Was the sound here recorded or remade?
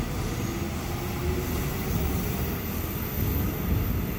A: recorded